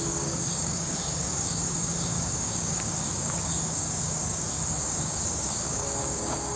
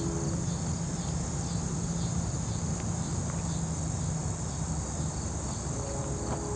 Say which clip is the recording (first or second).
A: second